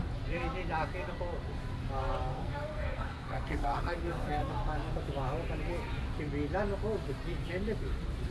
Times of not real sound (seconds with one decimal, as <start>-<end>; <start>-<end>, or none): 2.3-4.5